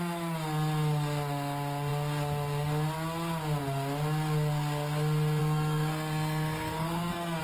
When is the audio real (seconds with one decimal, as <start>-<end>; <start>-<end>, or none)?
0.0-5.4